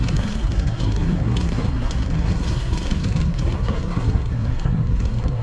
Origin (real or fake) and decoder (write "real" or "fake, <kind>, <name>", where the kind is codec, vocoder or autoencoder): fake, codec, SNAC